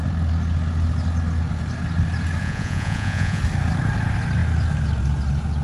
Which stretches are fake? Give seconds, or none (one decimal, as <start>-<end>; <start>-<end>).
2.4-3.4